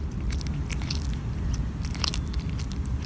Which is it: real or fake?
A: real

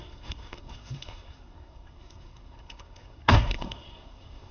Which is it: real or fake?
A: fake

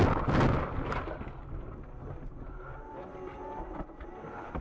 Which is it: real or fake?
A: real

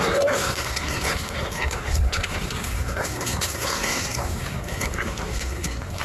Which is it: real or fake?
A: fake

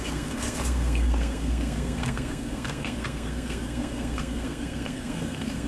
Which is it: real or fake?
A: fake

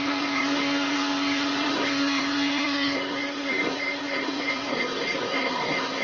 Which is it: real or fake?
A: fake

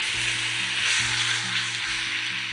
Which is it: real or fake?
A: real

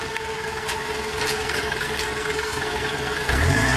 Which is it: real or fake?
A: fake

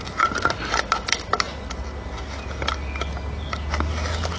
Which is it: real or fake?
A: real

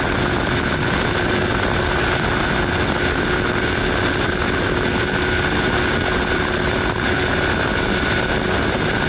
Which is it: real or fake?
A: real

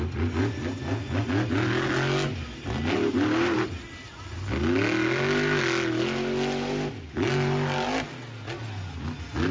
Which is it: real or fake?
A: real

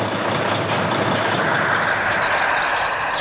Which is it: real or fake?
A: real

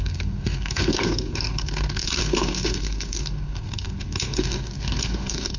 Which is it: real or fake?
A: fake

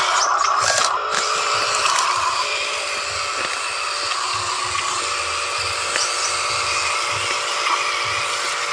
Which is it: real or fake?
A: real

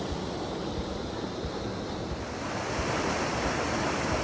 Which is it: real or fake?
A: real